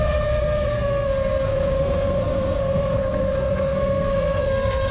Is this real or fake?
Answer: fake